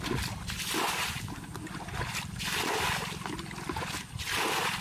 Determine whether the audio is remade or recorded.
recorded